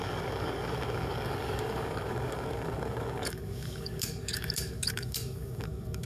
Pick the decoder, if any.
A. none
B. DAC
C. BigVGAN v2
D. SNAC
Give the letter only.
B